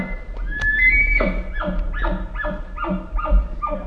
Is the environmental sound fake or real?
real